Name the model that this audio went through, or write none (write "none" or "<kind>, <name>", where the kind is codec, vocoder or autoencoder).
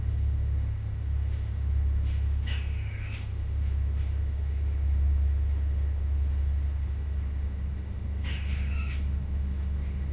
autoencoder, DAC-VAE